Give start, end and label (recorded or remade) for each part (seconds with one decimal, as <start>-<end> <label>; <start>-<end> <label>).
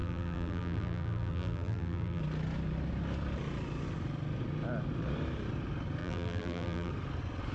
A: 0.0-2.2 remade; 2.2-6.0 recorded; 6.0-6.9 remade; 6.9-7.5 recorded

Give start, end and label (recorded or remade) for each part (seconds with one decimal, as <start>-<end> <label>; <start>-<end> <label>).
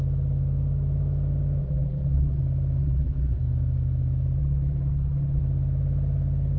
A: 0.0-1.6 recorded; 1.6-2.4 remade; 2.4-2.8 recorded; 2.8-3.4 remade; 3.4-4.4 recorded; 4.4-5.4 remade; 5.4-6.6 recorded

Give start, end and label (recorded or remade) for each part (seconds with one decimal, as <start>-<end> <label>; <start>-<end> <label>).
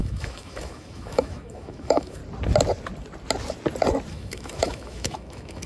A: 0.0-2.2 remade; 2.2-4.1 recorded; 4.1-5.7 remade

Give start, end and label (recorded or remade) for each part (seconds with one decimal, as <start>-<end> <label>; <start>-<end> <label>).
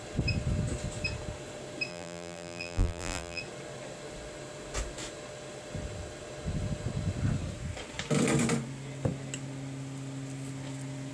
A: 0.0-1.9 recorded; 1.9-3.4 remade; 3.4-11.1 recorded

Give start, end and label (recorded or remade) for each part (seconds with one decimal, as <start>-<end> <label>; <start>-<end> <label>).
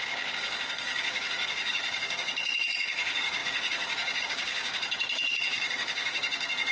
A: 0.0-6.7 remade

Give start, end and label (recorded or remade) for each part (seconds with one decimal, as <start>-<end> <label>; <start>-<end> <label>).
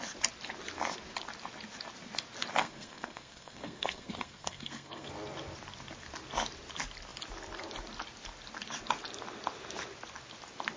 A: 0.0-2.6 recorded; 2.6-5.1 remade; 5.1-10.8 recorded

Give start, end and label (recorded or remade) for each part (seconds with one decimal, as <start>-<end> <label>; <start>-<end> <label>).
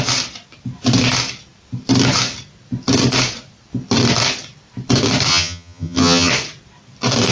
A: 0.0-5.3 recorded; 5.3-6.3 remade; 6.3-7.3 recorded